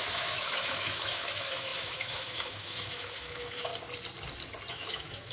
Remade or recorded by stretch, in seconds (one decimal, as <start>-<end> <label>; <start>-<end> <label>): 0.0-3.7 remade; 3.7-4.7 recorded; 4.7-5.3 remade